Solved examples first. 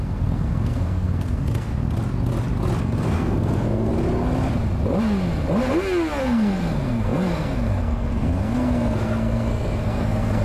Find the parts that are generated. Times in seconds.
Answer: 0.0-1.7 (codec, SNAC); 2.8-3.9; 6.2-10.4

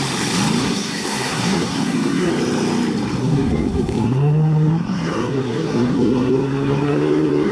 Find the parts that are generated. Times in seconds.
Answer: 0.6-2.3 (codec, SNAC); 3.2-7.5

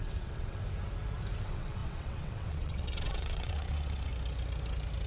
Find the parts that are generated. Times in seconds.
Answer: 0.0-0.6 (vocoder, WaveNeXt); 1.4-4.1